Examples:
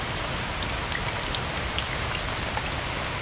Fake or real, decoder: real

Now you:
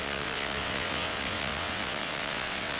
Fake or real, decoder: fake, vocoder, WaveNeXt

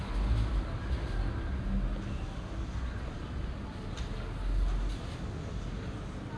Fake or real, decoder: real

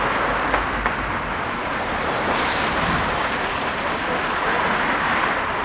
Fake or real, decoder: real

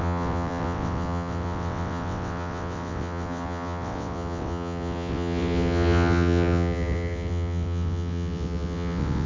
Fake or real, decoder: fake, vocoder, WaveNeXt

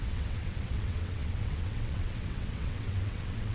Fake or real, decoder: fake, vocoder, WaveNeXt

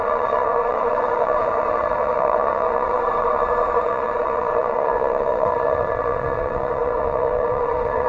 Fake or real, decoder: fake, vocoder, WaveNeXt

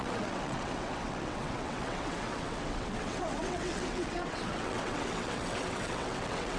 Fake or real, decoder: fake, vocoder, WaveNeXt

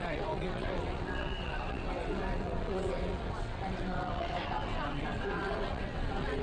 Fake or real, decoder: fake, vocoder, WaveNeXt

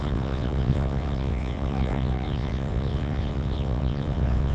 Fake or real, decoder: fake, vocoder, WaveNeXt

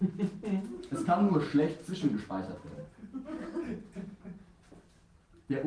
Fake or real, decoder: real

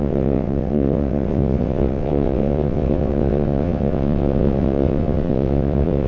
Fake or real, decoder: fake, vocoder, WaveNeXt